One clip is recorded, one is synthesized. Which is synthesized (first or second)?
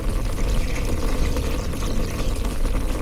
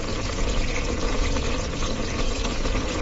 second